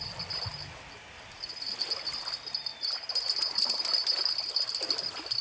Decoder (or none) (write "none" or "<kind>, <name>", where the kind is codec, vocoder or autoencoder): none